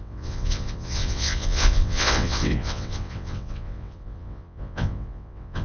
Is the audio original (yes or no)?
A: no